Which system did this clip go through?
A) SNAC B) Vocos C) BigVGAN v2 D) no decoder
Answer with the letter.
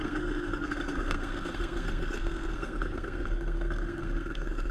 A